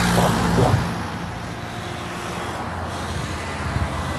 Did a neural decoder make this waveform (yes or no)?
no